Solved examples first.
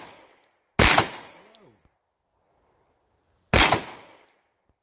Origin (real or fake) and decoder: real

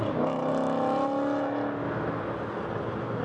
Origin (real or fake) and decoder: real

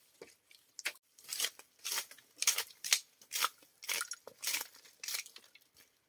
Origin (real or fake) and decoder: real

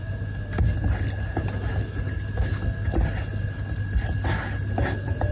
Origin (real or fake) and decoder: real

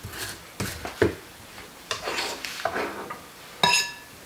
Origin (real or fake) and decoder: real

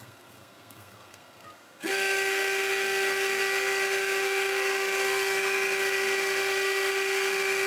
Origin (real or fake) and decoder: fake, codec, SNAC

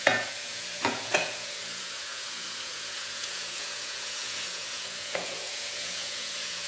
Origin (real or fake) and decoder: fake, vocoder, Vocos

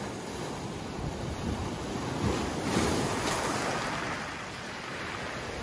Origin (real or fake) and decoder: real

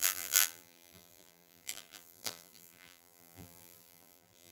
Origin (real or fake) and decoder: fake, vocoder, BigVGAN v2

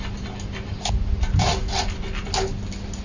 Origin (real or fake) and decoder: real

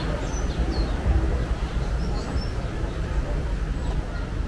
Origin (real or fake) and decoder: real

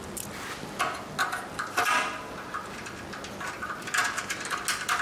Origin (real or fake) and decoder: real